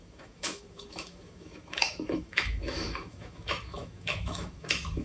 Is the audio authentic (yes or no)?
no